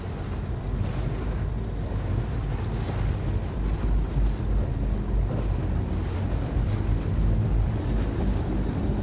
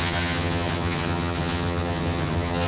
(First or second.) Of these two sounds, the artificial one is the second